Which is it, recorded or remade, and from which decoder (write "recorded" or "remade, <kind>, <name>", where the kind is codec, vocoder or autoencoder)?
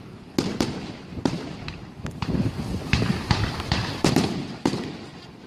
remade, vocoder, BigVGAN v2